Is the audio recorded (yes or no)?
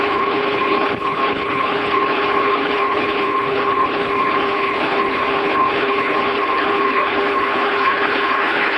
no